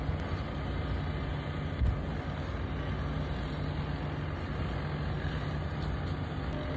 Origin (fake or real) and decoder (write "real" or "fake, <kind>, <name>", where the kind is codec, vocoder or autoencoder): real